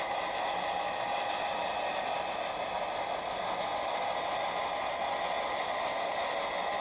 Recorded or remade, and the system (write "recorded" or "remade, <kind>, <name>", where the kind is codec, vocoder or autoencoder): recorded